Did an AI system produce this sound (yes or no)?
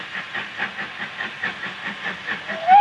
no